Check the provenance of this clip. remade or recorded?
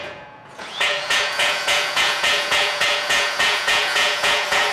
remade